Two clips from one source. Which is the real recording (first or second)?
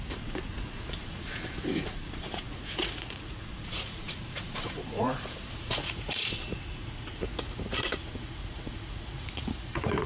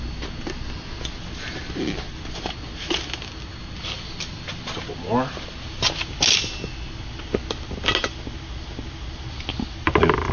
second